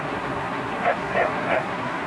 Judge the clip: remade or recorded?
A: remade